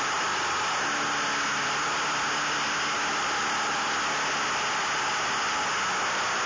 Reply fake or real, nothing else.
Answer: real